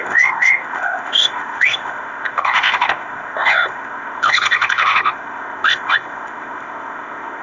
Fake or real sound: fake